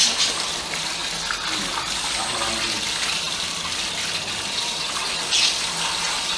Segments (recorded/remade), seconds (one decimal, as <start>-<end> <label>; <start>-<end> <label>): 0.0-6.4 recorded

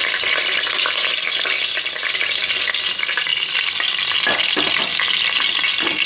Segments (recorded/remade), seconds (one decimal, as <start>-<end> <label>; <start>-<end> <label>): 0.0-6.1 recorded

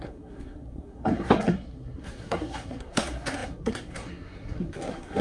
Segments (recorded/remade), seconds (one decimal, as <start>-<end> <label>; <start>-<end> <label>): 0.0-5.2 remade

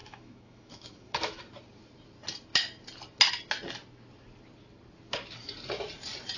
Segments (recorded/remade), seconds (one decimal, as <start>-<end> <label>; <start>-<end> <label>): 0.0-1.4 remade; 1.4-6.4 recorded